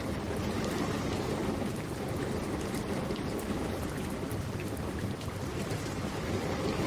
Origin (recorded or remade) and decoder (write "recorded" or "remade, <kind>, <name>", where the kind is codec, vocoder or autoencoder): remade, vocoder, BigVGAN v2